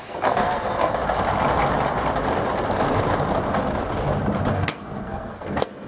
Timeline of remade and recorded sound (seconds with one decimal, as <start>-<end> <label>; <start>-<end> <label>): 0.0-1.0 remade; 1.0-4.5 recorded; 4.5-5.9 remade